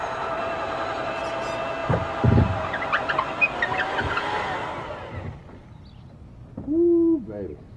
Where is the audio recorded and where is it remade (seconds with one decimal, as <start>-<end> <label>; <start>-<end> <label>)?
0.0-7.8 recorded